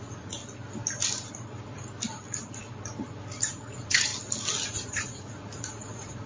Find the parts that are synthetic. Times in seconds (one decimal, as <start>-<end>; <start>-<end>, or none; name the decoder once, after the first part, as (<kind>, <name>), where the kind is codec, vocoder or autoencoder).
0.0-0.4 (vocoder, Vocos); 3.5-4.1; 4.7-6.3